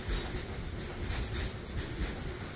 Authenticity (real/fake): real